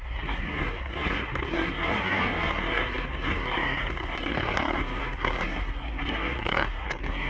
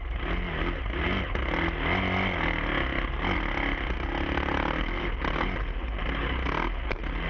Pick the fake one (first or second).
first